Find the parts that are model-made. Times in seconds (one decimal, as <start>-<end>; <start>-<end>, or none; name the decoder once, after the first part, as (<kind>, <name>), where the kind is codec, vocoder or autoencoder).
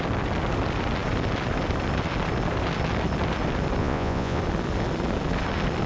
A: 3.8-4.4 (vocoder, Vocos)